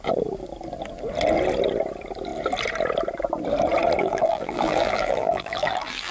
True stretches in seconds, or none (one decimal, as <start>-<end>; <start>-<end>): 0.0-4.0